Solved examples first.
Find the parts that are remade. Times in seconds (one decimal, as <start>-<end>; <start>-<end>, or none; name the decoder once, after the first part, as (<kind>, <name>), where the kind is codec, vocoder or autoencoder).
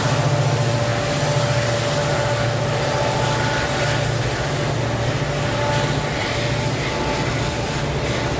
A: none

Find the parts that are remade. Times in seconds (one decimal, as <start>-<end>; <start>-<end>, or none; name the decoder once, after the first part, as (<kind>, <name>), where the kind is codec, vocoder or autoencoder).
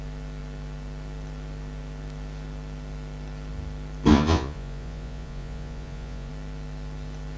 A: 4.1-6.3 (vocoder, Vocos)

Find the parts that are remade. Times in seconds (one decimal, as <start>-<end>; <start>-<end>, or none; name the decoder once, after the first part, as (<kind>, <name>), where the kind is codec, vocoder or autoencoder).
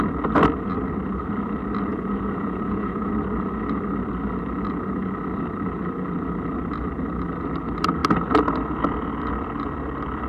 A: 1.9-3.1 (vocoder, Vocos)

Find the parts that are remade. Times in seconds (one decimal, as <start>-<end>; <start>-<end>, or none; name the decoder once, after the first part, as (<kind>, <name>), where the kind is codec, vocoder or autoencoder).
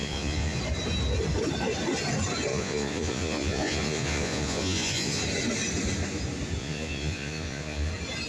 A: 0.0-0.6 (vocoder, Vocos); 2.5-5.2; 6.6-7.9